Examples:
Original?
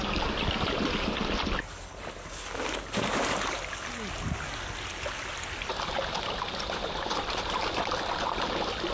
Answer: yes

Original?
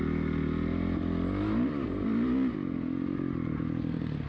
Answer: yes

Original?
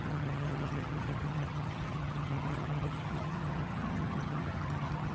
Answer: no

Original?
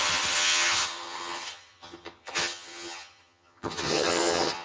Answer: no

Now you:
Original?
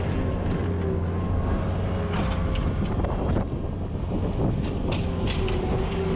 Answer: yes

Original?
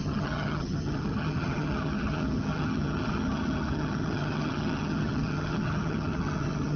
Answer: no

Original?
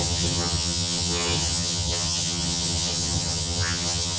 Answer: no